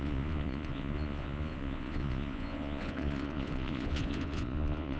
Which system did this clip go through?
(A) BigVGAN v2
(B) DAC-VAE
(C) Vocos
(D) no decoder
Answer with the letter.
C